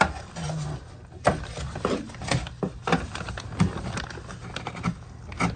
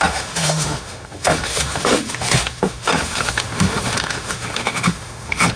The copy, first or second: second